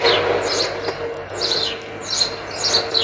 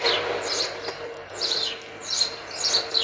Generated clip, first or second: second